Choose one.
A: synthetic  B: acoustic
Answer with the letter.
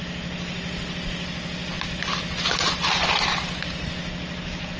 B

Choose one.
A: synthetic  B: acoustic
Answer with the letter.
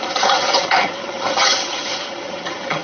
A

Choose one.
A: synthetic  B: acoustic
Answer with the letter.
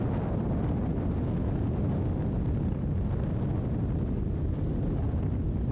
B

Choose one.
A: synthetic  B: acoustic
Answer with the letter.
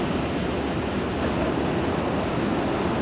B